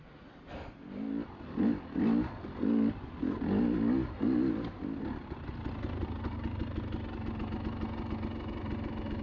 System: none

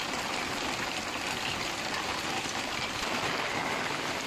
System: none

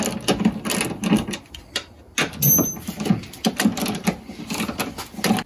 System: none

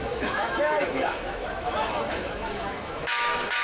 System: autoencoder, DAC-VAE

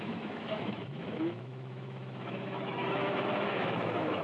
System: autoencoder, DAC-VAE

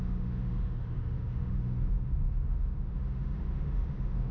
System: autoencoder, DAC-VAE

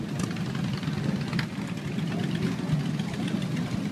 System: none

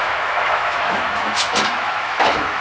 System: autoencoder, DAC-VAE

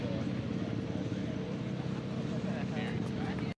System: none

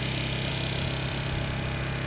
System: none